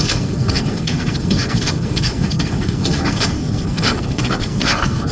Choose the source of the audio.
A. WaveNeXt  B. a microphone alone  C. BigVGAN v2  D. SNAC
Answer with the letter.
D